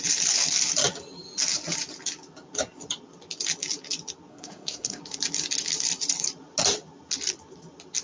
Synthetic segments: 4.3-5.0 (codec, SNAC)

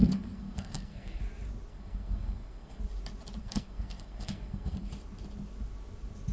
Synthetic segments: 0.0-1.2 (codec, SNAC); 1.7-2.8; 3.4-4.9

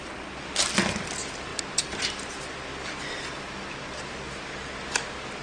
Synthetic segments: none

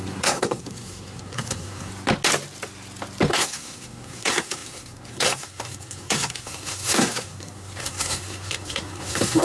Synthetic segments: 0.0-1.9 (codec, SNAC); 3.3-9.4

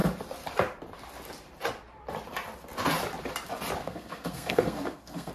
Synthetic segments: 3.8-5.3 (codec, SNAC)

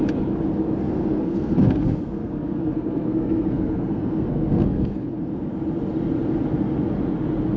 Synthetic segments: 0.8-5.1 (codec, SNAC)